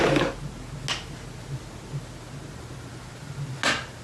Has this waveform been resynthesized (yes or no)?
no